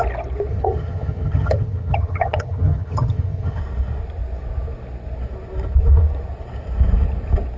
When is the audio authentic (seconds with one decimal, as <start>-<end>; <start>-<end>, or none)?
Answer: 0.0-0.5; 3.6-7.6